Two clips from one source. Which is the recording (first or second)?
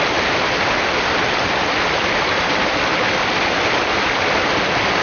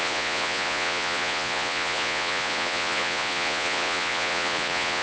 first